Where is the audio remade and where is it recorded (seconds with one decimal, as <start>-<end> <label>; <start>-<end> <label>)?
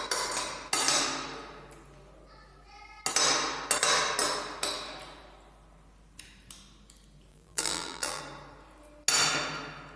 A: 0.0-7.3 recorded; 7.3-8.2 remade; 8.2-10.0 recorded